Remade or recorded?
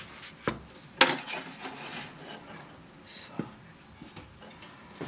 recorded